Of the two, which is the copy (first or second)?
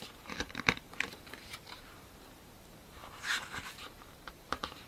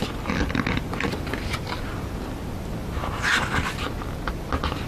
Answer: first